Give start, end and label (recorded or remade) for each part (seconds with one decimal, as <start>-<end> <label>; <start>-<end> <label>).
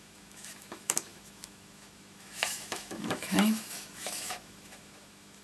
0.0-5.4 remade